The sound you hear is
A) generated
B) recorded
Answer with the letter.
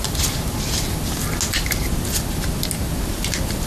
B